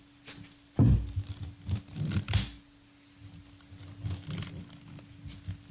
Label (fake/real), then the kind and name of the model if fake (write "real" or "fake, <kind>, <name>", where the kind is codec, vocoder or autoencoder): real